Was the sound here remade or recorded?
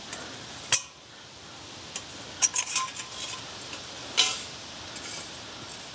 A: recorded